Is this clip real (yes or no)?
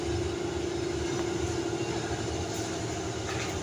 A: yes